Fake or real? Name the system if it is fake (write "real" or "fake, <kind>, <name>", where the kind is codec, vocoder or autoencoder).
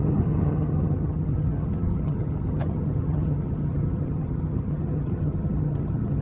fake, vocoder, HiFi-GAN